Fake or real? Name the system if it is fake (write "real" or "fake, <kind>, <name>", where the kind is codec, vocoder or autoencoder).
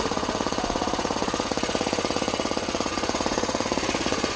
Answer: fake, vocoder, Vocos